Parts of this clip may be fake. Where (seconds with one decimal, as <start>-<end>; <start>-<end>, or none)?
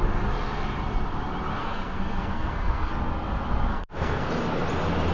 1.6-2.9; 3.7-4.3